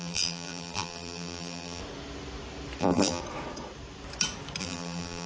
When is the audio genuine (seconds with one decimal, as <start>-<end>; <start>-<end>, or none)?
1.8-2.8; 3.2-4.6